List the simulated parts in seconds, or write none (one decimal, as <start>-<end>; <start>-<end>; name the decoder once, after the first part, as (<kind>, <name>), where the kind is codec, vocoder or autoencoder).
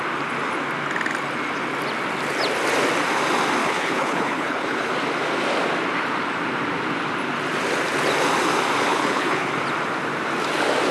3.6-4.9 (codec, HILCodec); 8.9-9.5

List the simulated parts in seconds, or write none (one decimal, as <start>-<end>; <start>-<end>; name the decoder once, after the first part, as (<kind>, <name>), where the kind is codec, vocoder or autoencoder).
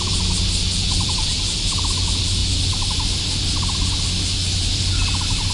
none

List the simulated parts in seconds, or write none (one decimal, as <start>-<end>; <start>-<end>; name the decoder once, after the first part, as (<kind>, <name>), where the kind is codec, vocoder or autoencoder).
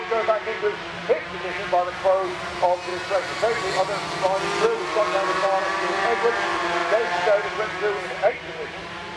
none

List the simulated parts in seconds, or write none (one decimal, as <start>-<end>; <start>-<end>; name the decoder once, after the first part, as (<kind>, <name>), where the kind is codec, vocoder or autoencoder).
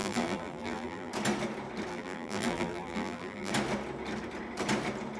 0.0-1.1 (vocoder, BigVGAN v2); 1.9-3.5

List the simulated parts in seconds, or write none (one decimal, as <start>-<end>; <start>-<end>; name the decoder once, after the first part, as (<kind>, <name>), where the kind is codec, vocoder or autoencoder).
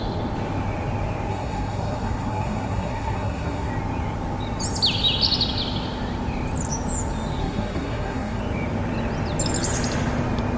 1.3-3.7 (codec, SNAC); 7.4-8.4